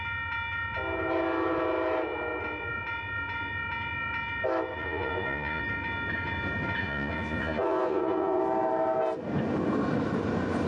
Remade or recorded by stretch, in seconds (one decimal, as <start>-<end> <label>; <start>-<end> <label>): 0.0-4.7 recorded; 4.7-5.6 remade; 5.6-6.8 recorded; 6.8-8.4 remade; 8.4-10.7 recorded